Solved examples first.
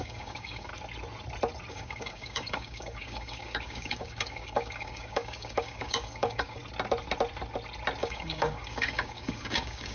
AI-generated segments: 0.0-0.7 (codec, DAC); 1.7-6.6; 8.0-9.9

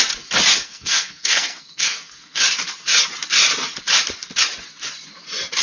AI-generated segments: 0.5-2.4 (codec, SNAC)

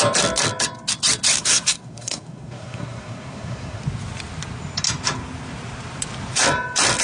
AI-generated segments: 1.4-3.8 (codec, SNAC)

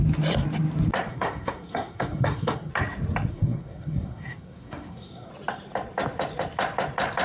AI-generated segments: 1.1-2.7 (codec, SNAC); 3.3-5.3